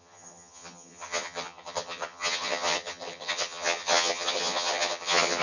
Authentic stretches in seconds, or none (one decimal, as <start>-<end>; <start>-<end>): none